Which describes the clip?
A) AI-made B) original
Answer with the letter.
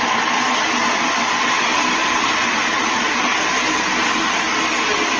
A